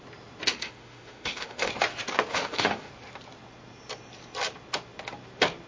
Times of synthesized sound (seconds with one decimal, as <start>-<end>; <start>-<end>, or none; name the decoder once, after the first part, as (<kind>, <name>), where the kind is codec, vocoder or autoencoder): 0.5-1.7 (autoencoder, DAC-VAE); 2.3-2.9